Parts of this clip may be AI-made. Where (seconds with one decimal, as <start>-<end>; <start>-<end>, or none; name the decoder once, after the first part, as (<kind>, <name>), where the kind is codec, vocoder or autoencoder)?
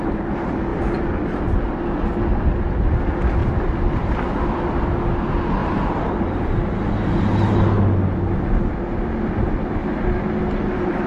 3.4-4.6 (vocoder, BigVGAN v2); 5.6-6.5